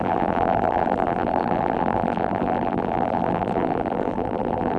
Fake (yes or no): yes